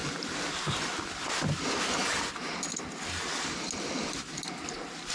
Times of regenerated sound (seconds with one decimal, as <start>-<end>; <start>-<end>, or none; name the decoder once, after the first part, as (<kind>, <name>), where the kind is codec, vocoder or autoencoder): none